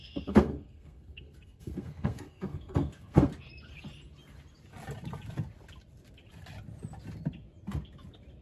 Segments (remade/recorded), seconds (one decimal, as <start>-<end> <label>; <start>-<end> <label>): 0.0-3.3 remade; 3.3-8.4 recorded